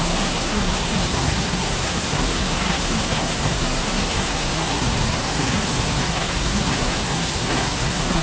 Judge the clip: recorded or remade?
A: remade